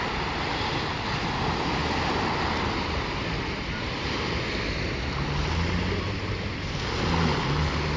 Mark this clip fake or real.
real